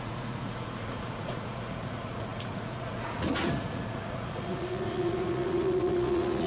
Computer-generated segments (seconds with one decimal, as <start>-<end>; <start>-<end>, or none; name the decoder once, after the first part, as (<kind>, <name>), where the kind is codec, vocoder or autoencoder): 0.0-6.5 (vocoder, Vocos)